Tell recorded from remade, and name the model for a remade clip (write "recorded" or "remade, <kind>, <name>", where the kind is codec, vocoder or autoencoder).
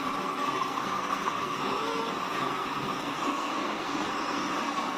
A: remade, codec, SNAC